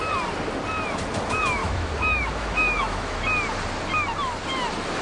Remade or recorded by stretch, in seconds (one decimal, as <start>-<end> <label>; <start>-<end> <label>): 0.0-1.6 recorded; 1.6-3.2 remade; 3.2-5.0 recorded